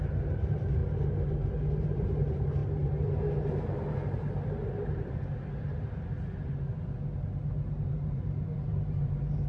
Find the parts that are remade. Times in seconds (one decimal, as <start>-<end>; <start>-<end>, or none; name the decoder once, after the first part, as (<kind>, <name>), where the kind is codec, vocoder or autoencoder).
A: 0.0-0.8 (vocoder, BigVGAN v2); 1.8-2.6; 3.5-5.2; 7.8-9.5